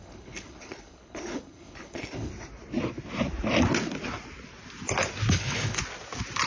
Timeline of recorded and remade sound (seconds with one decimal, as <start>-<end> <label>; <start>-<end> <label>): 0.0-2.3 remade; 2.3-5.3 recorded; 5.3-5.8 remade; 5.8-6.5 recorded